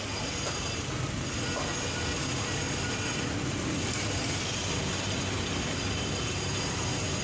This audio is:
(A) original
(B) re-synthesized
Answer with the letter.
A